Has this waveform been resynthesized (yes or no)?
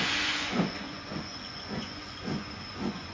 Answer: yes